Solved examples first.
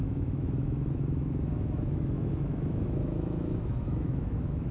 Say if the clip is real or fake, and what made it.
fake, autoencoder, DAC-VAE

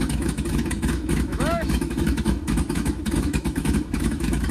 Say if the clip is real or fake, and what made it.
fake, autoencoder, DAC-VAE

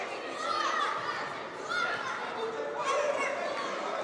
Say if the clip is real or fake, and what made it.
real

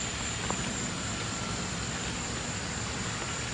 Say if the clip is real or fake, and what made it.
real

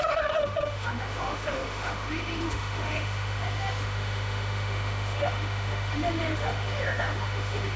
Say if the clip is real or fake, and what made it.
fake, autoencoder, DAC-VAE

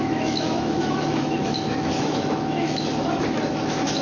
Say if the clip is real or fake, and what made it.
fake, autoencoder, DAC-VAE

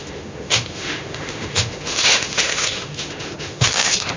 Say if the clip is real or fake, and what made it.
fake, autoencoder, DAC-VAE